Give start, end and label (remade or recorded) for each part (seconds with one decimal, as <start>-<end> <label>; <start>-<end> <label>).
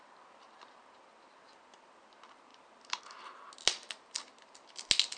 0.0-5.2 recorded